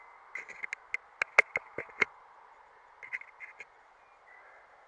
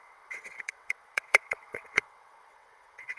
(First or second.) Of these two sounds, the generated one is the second